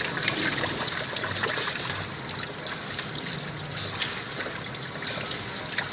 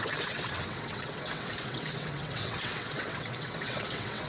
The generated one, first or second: second